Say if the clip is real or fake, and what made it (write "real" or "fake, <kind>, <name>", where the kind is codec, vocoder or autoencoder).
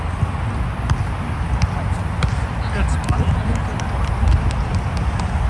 real